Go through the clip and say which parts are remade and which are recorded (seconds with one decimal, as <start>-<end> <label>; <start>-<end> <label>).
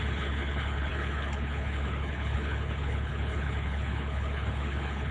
0.0-5.1 remade